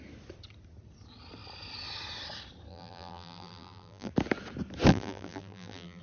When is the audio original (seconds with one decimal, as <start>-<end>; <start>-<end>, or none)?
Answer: 0.0-2.7; 4.1-4.9